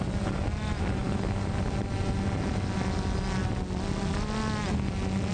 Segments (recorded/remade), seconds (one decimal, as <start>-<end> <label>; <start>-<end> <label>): 0.0-5.3 recorded